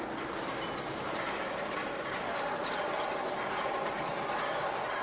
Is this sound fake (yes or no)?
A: no